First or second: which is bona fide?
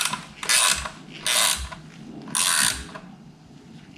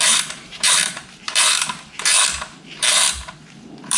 first